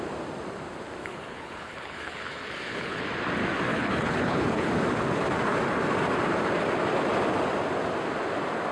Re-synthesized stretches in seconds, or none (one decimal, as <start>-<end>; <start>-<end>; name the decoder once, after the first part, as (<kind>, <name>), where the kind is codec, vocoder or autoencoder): 1.0-3.0 (codec, HILCodec); 3.7-4.7